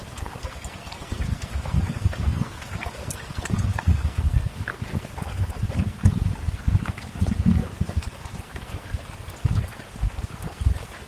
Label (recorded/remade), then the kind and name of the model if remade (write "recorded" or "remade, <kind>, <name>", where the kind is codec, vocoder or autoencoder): remade, codec, SNAC